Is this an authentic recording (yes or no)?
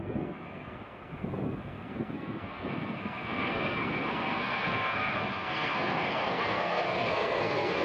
no